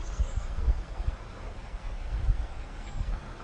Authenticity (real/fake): fake